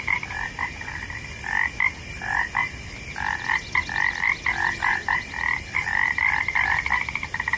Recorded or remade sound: recorded